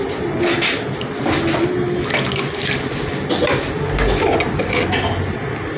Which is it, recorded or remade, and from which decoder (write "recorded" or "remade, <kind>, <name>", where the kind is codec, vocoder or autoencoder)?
recorded